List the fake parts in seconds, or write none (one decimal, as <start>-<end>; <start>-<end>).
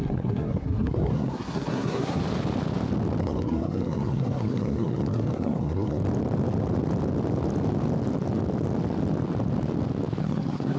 0.0-2.2; 3.2-6.0; 10.2-10.8